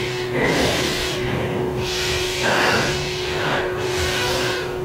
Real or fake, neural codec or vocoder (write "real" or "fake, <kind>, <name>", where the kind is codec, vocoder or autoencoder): fake, codec, DAC